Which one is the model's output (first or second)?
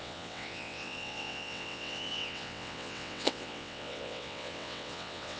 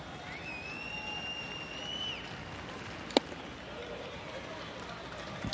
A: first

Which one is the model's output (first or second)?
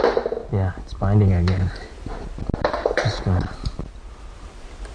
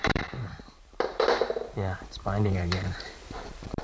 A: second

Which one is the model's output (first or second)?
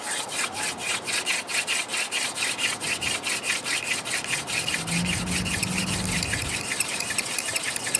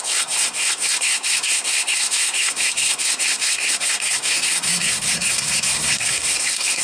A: second